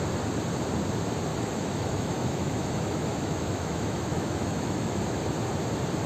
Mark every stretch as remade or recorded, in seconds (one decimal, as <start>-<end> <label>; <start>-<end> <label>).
0.0-1.3 recorded; 1.3-5.0 remade; 5.0-6.1 recorded